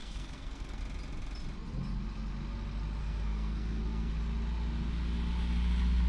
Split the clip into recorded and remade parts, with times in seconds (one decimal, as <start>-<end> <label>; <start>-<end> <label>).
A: 0.0-0.8 remade; 0.8-3.0 recorded; 3.0-4.1 remade; 4.1-6.1 recorded